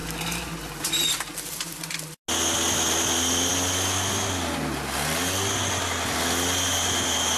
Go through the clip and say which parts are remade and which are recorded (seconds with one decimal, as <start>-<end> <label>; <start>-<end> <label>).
0.0-7.4 recorded